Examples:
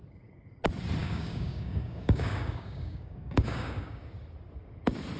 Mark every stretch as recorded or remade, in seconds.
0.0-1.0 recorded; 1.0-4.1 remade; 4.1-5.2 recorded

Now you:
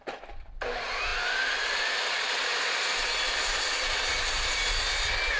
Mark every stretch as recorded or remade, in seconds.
0.0-2.4 remade; 2.4-3.7 recorded; 3.7-4.6 remade; 4.6-5.4 recorded